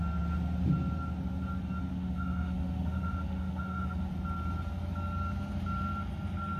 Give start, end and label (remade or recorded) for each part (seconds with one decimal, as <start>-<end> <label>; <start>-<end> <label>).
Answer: 0.0-1.9 recorded; 1.9-4.1 remade; 4.1-6.6 recorded